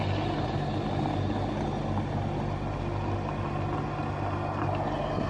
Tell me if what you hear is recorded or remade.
recorded